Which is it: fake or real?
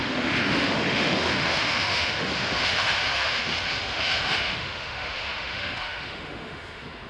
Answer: fake